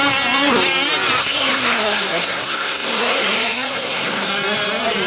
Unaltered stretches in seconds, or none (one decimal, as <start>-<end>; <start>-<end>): 0.0-1.2; 4.3-5.1